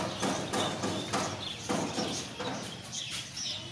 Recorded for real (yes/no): yes